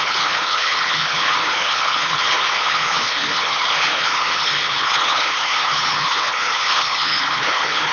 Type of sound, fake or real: fake